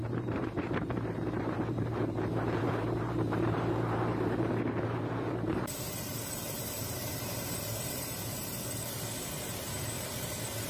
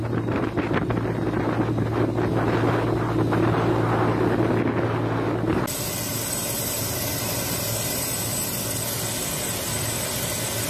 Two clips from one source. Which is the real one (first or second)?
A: second